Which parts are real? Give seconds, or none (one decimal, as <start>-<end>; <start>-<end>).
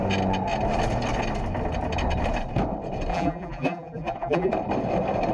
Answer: 0.0-3.1; 4.5-5.3